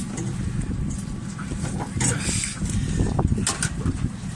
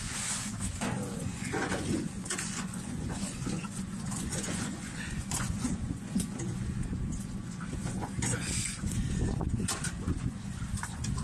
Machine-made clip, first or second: second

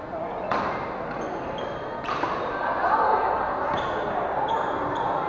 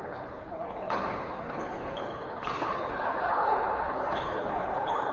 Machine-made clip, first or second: second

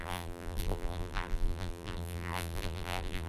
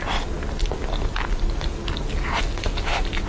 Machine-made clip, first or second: first